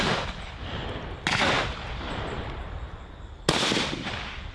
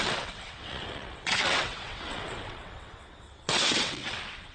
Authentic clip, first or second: first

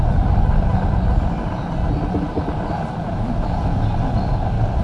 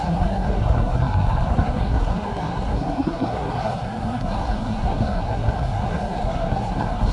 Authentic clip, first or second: first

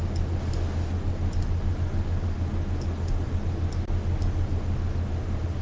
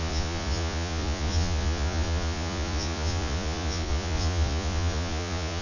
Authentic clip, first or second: first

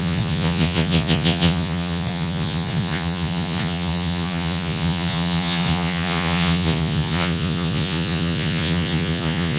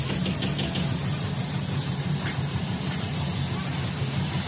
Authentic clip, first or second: second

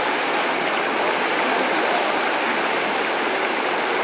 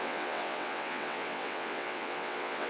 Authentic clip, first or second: first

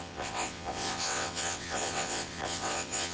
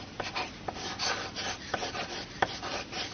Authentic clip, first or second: second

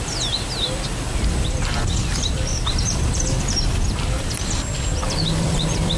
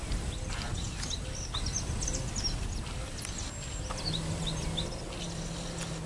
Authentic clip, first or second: second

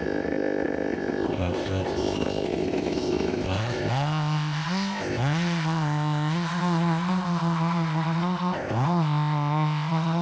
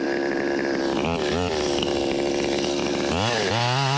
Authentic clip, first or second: second